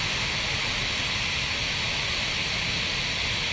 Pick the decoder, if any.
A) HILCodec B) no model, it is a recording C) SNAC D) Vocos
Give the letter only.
B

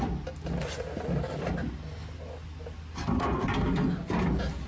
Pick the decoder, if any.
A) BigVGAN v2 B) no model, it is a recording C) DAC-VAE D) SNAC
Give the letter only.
B